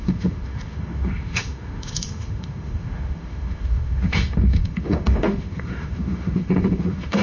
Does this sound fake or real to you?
fake